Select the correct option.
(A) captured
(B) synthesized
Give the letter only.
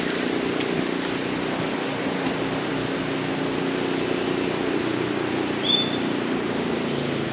A